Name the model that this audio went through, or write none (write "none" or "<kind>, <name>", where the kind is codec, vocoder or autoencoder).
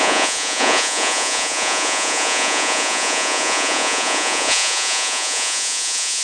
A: vocoder, Vocos